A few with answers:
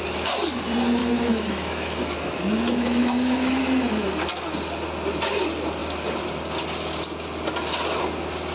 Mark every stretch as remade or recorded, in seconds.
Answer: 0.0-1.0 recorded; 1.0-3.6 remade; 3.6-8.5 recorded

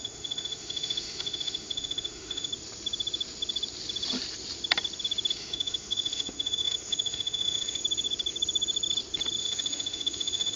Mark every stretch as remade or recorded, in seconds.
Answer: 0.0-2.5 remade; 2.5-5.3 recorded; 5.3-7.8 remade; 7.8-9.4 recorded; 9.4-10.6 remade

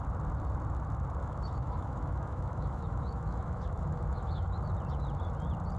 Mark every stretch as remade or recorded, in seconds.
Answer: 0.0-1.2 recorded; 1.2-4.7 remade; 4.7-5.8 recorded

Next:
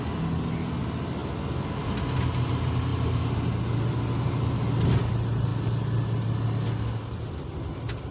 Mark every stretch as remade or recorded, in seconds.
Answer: 0.0-8.1 recorded

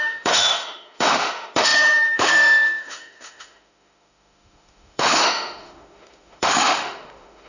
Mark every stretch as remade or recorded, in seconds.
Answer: 0.0-7.5 remade